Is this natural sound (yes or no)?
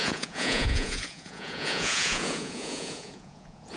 no